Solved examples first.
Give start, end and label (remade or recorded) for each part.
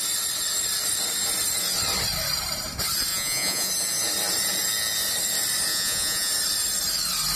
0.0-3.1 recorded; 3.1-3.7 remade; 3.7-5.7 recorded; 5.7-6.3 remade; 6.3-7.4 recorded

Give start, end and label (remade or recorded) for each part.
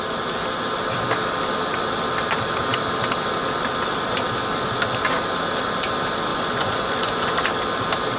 0.0-6.3 recorded; 6.3-7.4 remade; 7.4-8.2 recorded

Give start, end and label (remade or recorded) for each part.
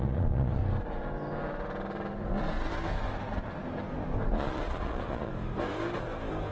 0.0-0.6 remade; 0.6-4.3 recorded; 4.3-5.3 remade; 5.3-6.5 recorded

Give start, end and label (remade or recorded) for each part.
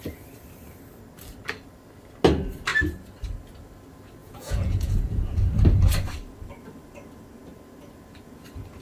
0.0-4.2 recorded; 4.2-5.5 remade; 5.5-8.8 recorded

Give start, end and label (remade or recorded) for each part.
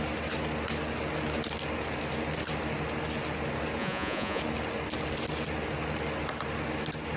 0.0-3.8 recorded; 3.8-4.4 remade; 4.4-7.2 recorded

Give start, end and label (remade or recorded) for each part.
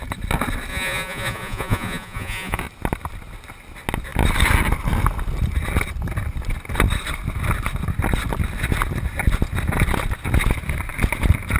0.0-0.7 recorded; 0.7-2.6 remade; 2.6-11.6 recorded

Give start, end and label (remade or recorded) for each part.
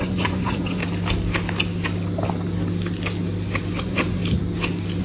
0.0-0.8 remade; 0.8-3.8 recorded; 3.8-4.2 remade; 4.2-5.0 recorded